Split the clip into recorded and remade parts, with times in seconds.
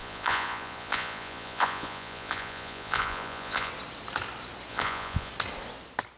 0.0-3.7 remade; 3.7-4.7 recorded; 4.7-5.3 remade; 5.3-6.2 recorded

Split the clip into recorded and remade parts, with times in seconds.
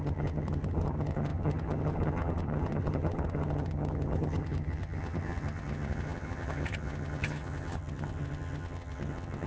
0.0-9.5 remade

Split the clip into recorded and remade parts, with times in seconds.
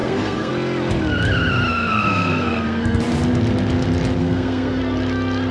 0.0-0.5 remade; 0.5-1.7 recorded; 1.7-3.0 remade; 3.0-4.2 recorded; 4.2-4.8 remade; 4.8-5.5 recorded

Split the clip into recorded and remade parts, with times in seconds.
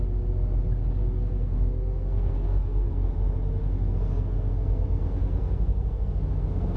0.0-1.0 recorded; 1.0-3.1 remade; 3.1-3.6 recorded; 3.6-6.8 remade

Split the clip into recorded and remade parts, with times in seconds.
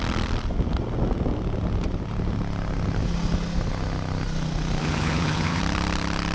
0.0-4.8 recorded; 4.8-5.6 remade; 5.6-6.3 recorded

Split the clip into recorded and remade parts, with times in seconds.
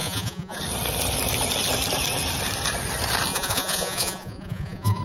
0.0-0.6 remade; 0.6-3.3 recorded; 3.3-5.0 remade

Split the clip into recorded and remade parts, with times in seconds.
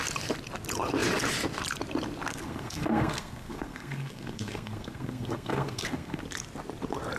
0.0-2.3 recorded; 2.3-6.2 remade; 6.2-7.2 recorded